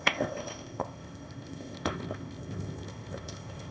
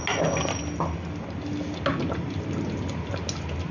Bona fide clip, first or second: second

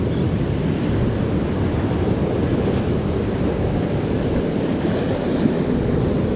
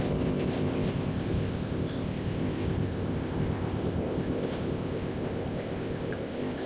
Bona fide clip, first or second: first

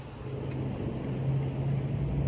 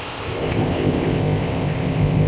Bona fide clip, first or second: first